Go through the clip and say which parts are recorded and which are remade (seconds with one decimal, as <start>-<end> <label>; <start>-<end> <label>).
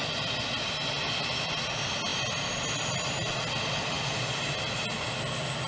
0.0-5.7 recorded